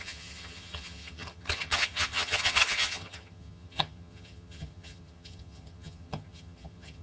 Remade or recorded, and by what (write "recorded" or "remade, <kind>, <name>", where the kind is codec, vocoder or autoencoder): remade, vocoder, HiFi-GAN